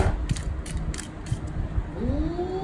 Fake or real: real